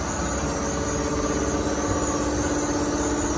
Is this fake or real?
real